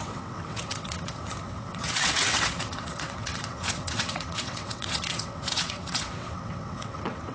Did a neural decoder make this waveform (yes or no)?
yes